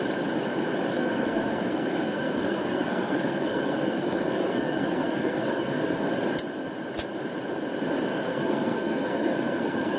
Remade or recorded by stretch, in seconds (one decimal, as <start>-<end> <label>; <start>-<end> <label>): 0.0-1.0 recorded; 1.0-6.1 remade; 6.1-8.1 recorded; 8.1-10.0 remade